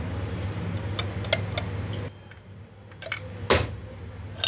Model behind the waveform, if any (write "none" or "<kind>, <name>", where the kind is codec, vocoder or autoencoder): none